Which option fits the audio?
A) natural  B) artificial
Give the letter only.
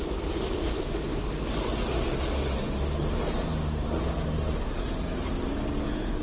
A